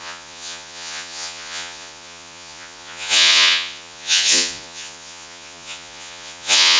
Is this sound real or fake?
fake